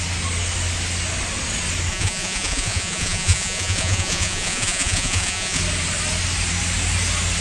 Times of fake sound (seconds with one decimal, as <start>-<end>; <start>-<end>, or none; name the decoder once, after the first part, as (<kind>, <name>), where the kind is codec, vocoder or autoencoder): 1.9-5.6 (vocoder, Vocos)